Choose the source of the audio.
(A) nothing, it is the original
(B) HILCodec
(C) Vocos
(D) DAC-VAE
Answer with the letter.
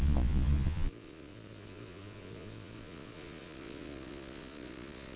C